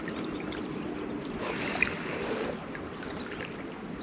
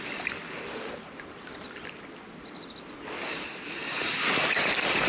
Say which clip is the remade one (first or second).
first